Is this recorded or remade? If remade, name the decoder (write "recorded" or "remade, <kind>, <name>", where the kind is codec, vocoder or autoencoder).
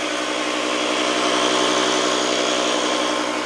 recorded